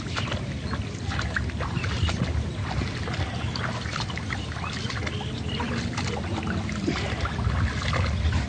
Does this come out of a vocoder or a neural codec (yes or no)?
no